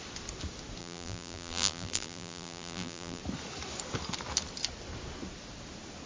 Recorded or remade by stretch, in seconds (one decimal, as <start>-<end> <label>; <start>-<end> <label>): 0.0-0.8 recorded; 0.8-3.2 remade; 3.2-6.1 recorded